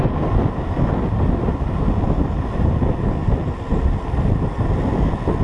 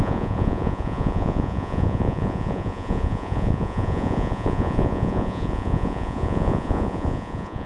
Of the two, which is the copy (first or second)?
second